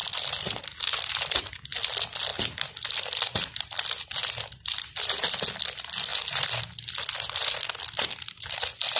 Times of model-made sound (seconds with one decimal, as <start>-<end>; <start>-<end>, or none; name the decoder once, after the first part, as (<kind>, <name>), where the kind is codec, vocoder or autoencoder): none